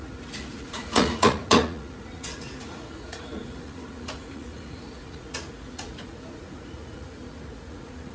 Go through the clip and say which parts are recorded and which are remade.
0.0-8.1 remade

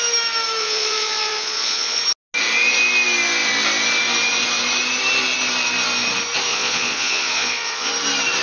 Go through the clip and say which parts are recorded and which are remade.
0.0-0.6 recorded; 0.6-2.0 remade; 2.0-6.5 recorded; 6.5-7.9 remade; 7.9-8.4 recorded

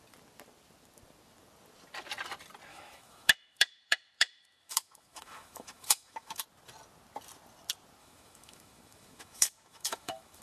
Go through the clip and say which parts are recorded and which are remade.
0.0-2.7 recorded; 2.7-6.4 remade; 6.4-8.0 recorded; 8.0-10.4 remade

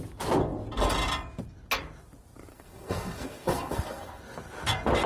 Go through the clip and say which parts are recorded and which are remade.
0.0-2.5 recorded; 2.5-4.2 remade; 4.2-5.1 recorded

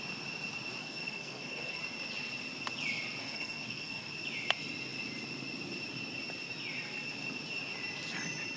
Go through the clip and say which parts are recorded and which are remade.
0.0-0.8 recorded; 0.8-1.8 remade; 1.8-3.2 recorded; 3.2-4.1 remade; 4.1-8.6 recorded

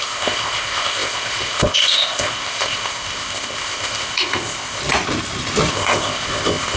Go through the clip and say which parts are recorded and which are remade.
0.0-4.8 remade; 4.8-5.7 recorded; 5.7-6.8 remade